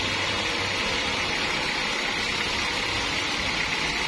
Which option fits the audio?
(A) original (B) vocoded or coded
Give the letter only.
A